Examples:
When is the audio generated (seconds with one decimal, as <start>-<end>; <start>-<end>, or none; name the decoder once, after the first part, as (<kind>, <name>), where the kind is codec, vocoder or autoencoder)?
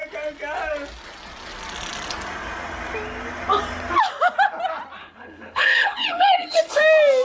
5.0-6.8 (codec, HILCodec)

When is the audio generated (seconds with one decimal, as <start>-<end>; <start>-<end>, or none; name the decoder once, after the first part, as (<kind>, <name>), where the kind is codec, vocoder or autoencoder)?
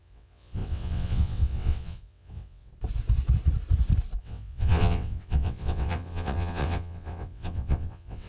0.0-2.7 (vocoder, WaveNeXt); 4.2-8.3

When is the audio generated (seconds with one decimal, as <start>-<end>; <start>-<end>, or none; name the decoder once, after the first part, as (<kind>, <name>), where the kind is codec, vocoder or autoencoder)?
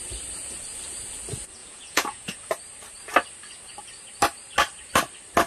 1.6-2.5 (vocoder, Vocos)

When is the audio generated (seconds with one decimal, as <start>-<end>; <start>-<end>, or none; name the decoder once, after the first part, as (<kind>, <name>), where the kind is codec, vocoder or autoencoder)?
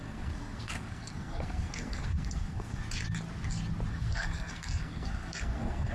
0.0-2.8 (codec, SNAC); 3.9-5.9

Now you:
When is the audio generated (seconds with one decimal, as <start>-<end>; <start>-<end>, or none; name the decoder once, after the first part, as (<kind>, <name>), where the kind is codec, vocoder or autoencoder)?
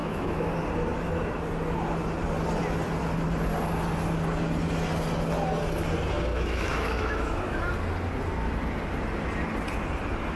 0.0-0.5 (autoencoder, DAC-VAE); 6.3-7.6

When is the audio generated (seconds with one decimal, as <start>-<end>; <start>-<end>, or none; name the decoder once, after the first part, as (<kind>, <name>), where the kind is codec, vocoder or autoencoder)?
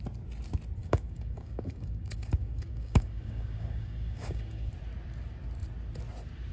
0.8-4.7 (codec, DAC)